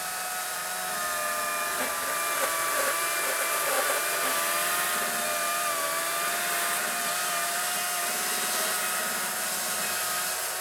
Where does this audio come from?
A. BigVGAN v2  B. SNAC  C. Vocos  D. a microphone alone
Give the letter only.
D